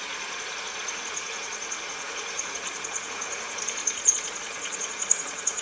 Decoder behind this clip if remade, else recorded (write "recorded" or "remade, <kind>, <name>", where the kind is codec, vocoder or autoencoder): remade, vocoder, Vocos